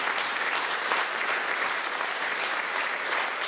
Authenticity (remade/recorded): recorded